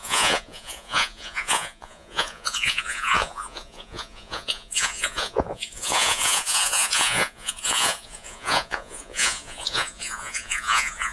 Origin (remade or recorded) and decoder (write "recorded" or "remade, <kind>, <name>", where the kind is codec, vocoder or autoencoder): remade, vocoder, Vocos